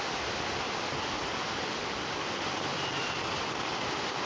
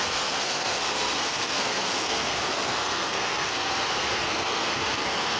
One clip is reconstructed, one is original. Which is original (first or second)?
first